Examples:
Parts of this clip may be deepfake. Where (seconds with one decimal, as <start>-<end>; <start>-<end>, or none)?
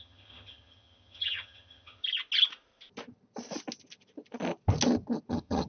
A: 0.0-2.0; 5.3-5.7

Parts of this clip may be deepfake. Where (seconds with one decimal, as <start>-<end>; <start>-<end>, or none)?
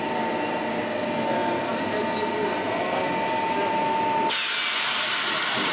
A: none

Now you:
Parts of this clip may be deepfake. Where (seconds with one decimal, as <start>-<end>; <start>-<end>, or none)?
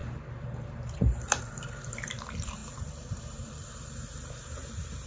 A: 0.0-5.1